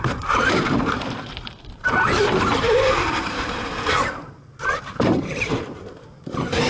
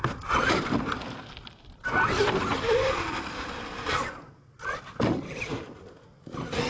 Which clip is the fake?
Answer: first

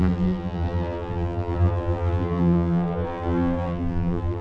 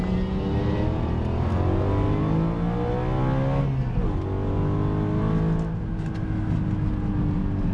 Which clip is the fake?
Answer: first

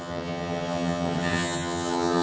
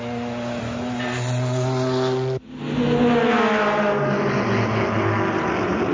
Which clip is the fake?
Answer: first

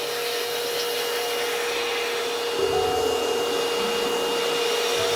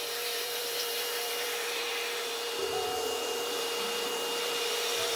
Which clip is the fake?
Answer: second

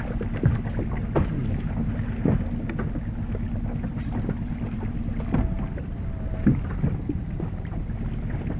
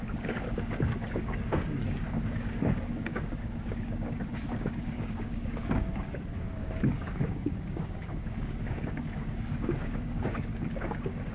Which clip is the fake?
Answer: second